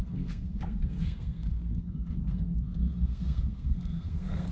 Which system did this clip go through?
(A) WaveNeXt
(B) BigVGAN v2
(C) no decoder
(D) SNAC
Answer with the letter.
D